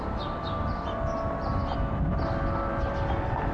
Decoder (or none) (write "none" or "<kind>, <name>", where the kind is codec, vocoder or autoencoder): none